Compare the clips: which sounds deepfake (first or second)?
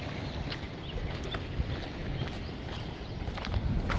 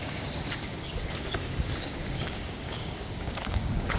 second